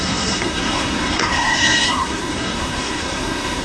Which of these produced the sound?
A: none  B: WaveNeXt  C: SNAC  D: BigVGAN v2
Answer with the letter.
C